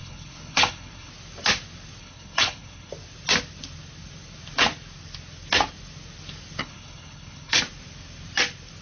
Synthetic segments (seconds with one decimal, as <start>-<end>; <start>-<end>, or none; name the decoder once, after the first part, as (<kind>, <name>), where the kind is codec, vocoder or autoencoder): 0.0-1.1 (codec, HILCodec); 2.0-2.9; 6.6-7.6